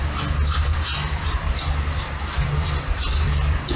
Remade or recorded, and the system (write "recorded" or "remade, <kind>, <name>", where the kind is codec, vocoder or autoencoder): remade, vocoder, BigVGAN v2